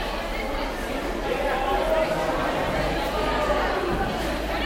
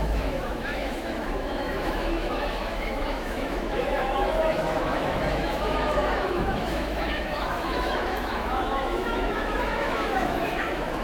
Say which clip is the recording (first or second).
first